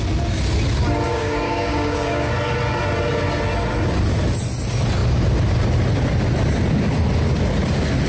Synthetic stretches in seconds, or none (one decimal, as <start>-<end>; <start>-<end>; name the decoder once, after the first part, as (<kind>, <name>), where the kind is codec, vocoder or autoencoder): 1.1-2.3 (codec, DAC)